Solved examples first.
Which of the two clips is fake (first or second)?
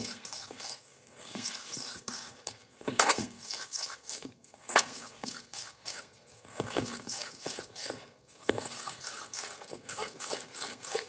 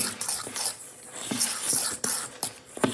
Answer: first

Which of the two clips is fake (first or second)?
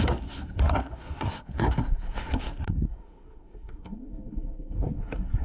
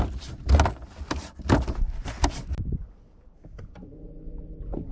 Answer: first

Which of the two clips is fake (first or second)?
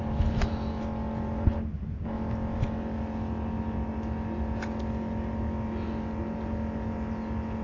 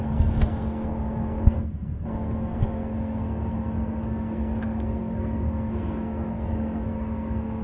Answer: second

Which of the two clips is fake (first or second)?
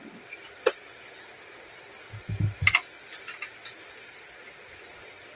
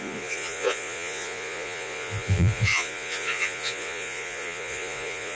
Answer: second